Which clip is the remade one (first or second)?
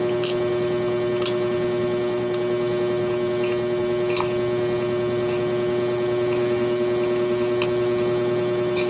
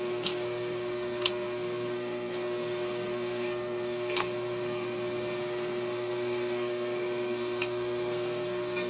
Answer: second